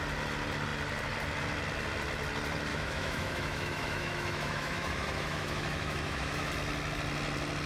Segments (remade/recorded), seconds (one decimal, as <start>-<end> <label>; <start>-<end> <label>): 0.0-2.7 recorded; 2.7-6.5 remade; 6.5-7.7 recorded